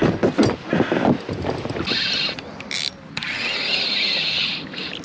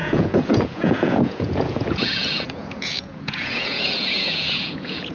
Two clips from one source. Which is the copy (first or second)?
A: second